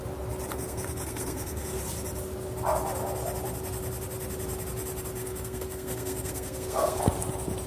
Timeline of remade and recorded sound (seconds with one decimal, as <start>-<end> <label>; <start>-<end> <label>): 0.0-0.5 recorded; 0.5-1.8 remade; 1.8-5.2 recorded; 5.2-7.0 remade; 7.0-7.7 recorded